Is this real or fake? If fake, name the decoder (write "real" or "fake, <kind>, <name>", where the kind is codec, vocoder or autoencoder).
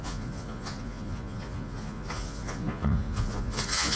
fake, vocoder, Vocos